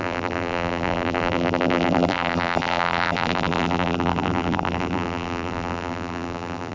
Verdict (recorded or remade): remade